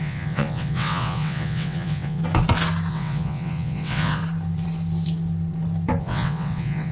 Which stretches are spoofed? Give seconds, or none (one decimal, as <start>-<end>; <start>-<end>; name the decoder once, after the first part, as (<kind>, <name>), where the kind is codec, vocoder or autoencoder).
0.0-2.2 (vocoder, WaveNeXt); 2.9-4.2; 6.0-6.9